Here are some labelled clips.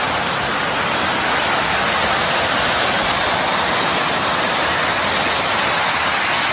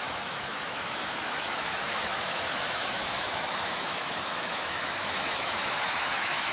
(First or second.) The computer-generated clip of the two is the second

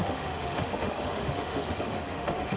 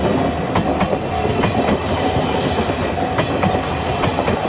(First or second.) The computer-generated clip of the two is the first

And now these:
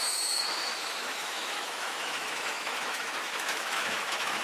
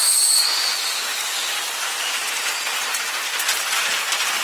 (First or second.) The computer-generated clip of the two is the first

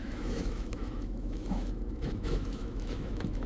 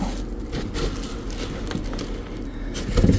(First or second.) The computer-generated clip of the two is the first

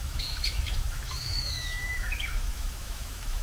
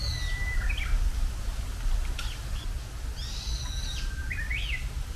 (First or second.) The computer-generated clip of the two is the first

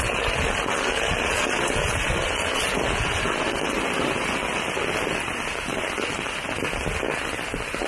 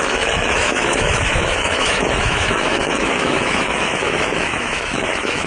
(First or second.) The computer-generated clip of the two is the second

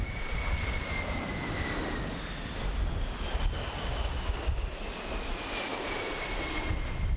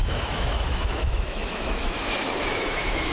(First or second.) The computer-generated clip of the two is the second